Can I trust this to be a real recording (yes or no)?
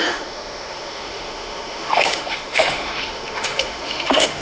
no